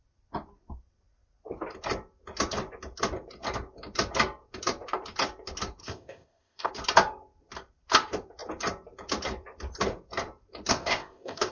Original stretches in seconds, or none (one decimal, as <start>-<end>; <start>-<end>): 0.0-5.8; 6.7-10.7